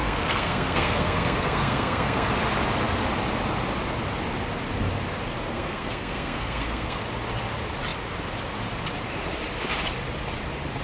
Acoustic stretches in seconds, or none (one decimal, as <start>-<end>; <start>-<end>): 2.3-5.5; 7.0-10.8